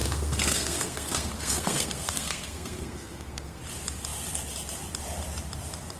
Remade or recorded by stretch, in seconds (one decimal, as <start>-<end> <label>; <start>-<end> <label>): 0.0-3.6 remade; 3.6-6.0 recorded